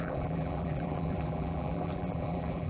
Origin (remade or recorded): remade